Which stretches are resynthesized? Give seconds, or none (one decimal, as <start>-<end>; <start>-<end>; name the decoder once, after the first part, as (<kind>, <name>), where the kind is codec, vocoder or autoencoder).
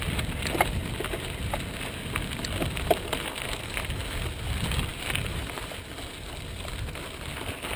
none